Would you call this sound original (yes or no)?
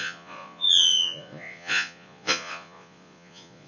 no